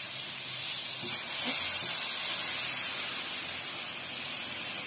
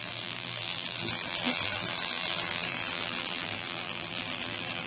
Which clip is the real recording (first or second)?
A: first